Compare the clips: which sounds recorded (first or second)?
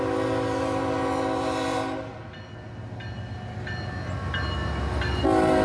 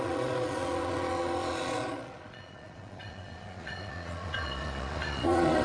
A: first